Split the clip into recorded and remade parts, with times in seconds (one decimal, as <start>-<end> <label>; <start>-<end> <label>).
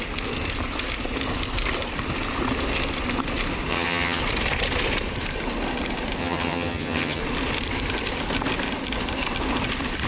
0.0-3.7 recorded; 3.7-4.2 remade; 4.2-6.2 recorded; 6.2-7.2 remade; 7.2-10.1 recorded